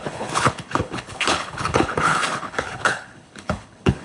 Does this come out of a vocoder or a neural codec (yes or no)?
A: yes